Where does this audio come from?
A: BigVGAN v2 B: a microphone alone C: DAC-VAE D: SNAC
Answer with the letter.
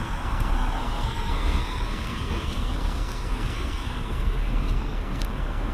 D